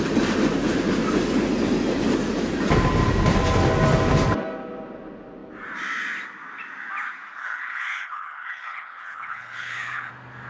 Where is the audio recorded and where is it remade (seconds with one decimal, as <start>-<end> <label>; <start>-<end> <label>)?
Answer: 0.0-7.4 recorded; 7.4-10.1 remade; 10.1-10.5 recorded